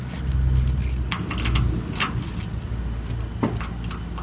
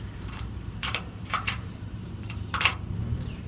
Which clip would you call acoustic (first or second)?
first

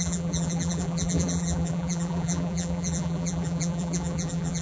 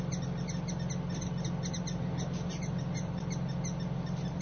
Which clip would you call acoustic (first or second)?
second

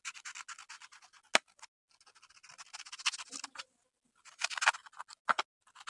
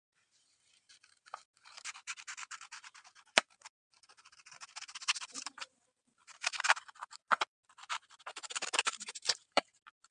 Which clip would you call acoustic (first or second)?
first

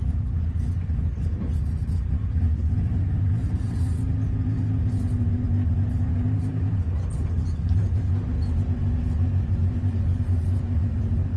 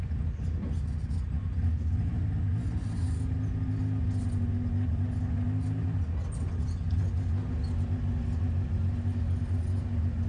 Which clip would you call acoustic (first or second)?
second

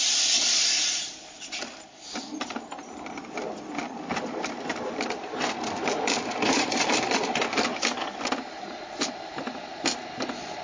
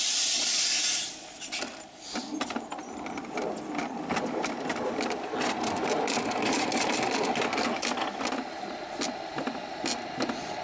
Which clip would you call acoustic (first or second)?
second